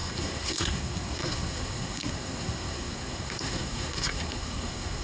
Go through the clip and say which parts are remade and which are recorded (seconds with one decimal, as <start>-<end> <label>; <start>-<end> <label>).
0.0-5.0 remade